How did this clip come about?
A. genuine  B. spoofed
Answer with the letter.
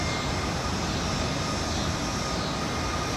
A